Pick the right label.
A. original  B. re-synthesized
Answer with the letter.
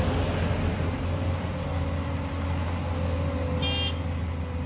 A